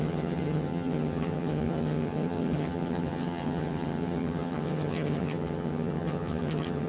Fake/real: fake